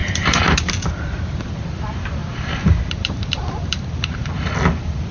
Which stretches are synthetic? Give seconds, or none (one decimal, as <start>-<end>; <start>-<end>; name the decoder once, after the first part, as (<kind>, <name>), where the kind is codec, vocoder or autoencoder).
0.0-0.7 (vocoder, BigVGAN v2); 2.2-4.3

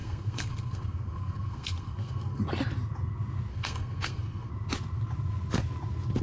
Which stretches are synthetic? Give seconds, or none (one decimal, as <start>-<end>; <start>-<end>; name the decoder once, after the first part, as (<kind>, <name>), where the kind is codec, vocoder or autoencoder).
0.0-2.4 (codec, SNAC); 3.5-4.5

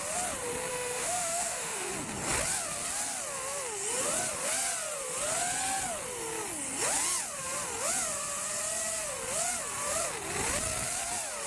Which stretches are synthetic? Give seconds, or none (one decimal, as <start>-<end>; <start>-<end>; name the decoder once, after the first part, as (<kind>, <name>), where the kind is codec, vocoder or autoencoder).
0.7-1.9 (autoencoder, DAC-VAE)

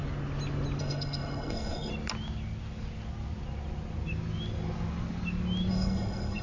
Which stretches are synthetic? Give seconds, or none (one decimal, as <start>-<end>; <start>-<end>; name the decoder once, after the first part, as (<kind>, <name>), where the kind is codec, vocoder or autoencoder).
0.8-1.9 (codec, SNAC); 5.7-6.4

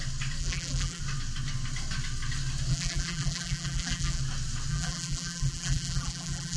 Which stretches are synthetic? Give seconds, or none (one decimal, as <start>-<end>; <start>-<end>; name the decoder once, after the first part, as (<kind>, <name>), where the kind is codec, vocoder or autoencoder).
0.4-1.0 (vocoder, BigVGAN v2); 2.7-4.2; 4.7-6.6

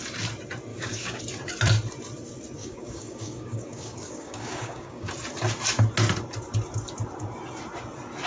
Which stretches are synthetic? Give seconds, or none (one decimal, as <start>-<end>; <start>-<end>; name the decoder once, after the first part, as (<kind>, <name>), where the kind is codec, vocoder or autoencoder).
0.7-1.2 (codec, DAC); 2.6-5.1